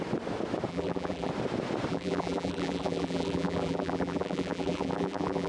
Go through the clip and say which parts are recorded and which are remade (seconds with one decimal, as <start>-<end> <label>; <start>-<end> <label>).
0.0-0.7 recorded; 0.7-1.3 remade; 1.3-1.9 recorded; 1.9-5.5 remade